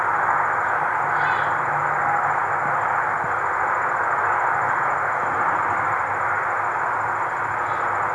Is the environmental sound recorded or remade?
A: recorded